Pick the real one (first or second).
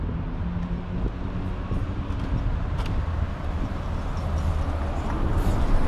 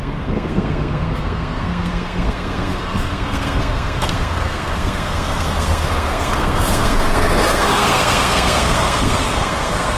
first